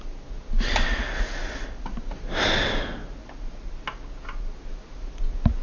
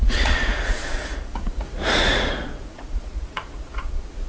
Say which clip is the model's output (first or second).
second